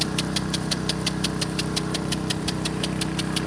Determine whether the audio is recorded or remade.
remade